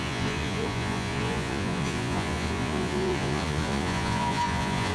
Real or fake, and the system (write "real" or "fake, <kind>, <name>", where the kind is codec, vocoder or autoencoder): fake, vocoder, Vocos